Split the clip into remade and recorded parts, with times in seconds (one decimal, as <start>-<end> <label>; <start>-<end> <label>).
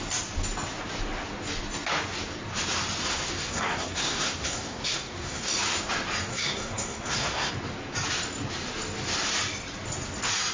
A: 0.0-3.0 recorded; 3.0-5.5 remade; 5.5-6.3 recorded; 6.3-7.5 remade; 7.5-10.5 recorded